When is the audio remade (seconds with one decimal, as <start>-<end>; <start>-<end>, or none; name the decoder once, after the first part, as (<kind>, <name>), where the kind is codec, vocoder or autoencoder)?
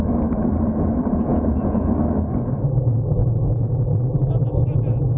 1.3-1.9 (vocoder, Vocos); 3.2-3.8